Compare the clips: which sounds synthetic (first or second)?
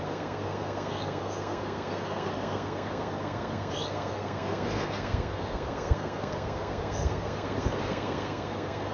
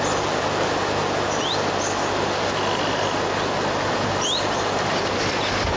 first